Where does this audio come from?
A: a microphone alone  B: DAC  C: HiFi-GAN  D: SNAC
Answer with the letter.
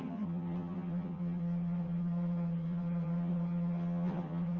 C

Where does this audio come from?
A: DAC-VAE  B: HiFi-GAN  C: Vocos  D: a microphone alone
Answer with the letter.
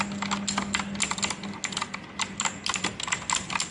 D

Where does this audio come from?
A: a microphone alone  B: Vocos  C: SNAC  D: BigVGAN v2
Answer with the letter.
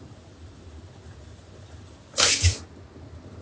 A